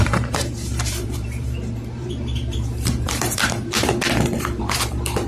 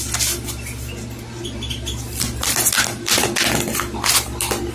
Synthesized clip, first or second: first